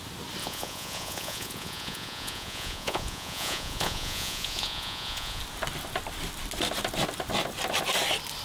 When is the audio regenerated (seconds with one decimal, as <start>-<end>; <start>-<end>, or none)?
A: 0.4-5.4